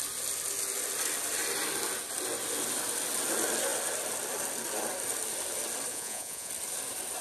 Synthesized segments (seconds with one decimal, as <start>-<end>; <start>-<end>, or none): 5.9-6.5